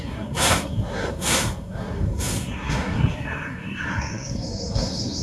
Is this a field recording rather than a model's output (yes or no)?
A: no